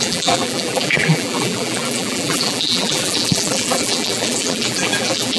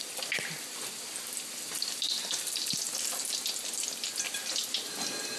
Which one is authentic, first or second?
second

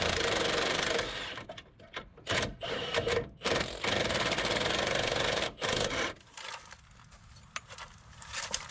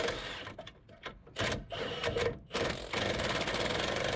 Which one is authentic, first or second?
second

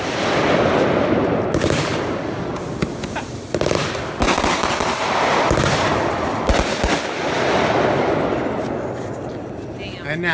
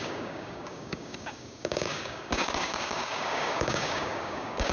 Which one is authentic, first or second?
first